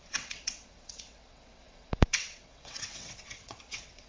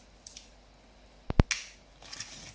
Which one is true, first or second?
second